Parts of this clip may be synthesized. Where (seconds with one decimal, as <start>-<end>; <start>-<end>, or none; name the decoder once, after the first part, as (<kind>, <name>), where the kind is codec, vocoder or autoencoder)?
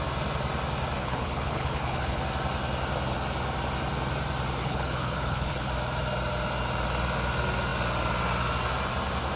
1.0-2.2 (codec, HILCodec); 4.6-5.7